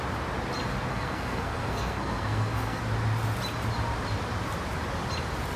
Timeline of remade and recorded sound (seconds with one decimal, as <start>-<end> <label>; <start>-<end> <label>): 0.0-0.9 recorded; 0.9-2.8 remade; 2.8-5.6 recorded